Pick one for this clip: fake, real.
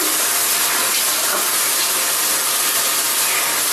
real